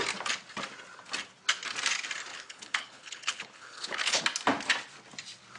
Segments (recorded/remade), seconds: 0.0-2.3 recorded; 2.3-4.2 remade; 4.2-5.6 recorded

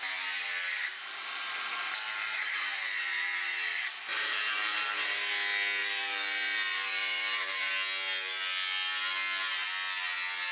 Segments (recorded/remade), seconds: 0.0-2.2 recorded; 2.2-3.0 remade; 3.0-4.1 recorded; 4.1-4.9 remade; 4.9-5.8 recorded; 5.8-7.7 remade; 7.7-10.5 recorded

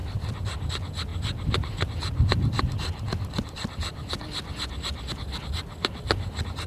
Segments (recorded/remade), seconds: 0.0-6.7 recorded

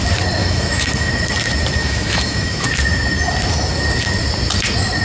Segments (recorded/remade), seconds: 0.0-0.4 recorded; 0.4-1.1 remade; 1.1-1.8 recorded; 1.8-2.7 remade; 2.7-5.0 recorded

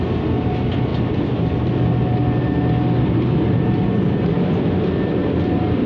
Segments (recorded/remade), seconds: 0.0-5.9 recorded